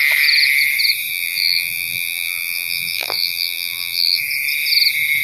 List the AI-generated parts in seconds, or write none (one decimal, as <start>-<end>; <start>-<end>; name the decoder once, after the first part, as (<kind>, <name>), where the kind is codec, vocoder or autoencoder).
1.1-4.2 (vocoder, BigVGAN v2)